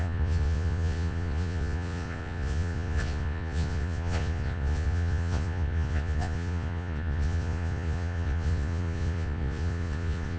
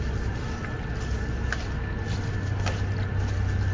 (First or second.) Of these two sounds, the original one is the second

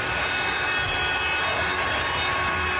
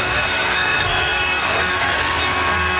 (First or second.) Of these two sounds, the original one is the first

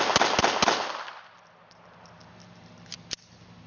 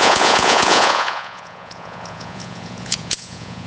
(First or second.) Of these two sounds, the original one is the first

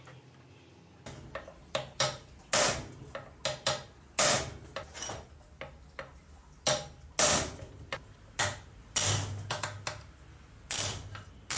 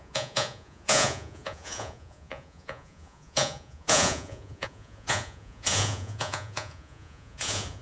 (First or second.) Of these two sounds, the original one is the first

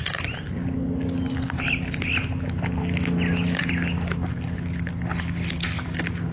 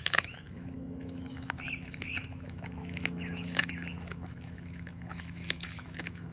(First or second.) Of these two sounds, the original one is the first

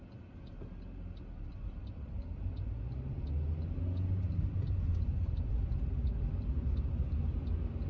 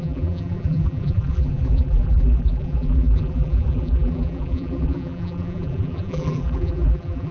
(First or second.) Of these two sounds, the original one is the first